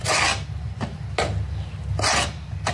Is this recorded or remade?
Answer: recorded